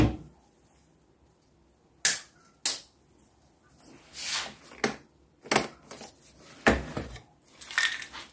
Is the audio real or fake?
real